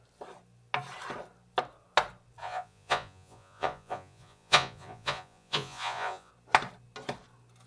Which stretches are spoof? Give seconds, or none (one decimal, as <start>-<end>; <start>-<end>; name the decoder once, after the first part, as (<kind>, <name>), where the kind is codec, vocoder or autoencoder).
2.4-6.3 (vocoder, Vocos)

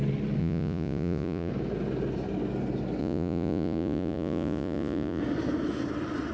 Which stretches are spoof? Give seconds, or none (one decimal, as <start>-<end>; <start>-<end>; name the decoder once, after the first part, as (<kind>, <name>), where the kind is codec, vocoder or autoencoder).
0.4-1.5 (vocoder, Vocos); 3.0-5.2